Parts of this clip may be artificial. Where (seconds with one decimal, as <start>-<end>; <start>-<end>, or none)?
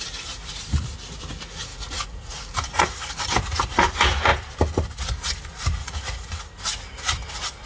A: 1.7-3.1; 5.8-6.4